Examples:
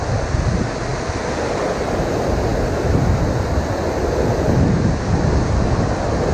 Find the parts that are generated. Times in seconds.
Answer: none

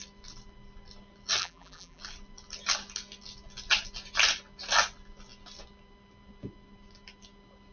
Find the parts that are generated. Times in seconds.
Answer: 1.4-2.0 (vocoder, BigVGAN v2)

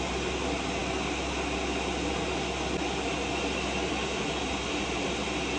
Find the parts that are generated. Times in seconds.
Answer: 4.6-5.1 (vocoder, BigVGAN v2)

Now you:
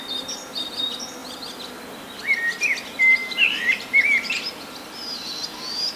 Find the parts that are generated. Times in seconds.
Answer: 3.2-4.2 (vocoder, BigVGAN v2)